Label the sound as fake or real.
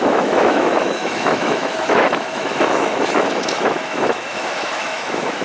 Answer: fake